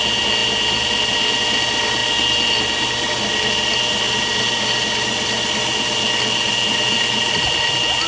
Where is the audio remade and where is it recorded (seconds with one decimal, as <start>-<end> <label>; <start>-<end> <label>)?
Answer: 0.0-8.1 recorded